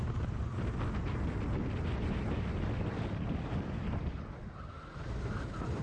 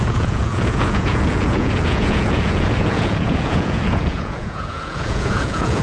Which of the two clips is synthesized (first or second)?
second